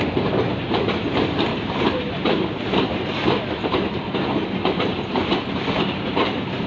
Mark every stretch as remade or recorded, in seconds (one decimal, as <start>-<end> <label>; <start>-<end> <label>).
0.0-1.5 recorded; 1.5-5.5 remade; 5.5-6.7 recorded